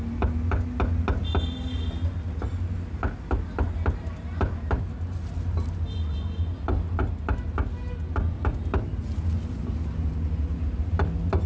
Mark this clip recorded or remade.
recorded